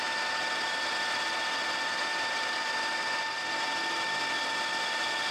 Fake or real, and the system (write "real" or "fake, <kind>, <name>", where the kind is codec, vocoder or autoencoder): real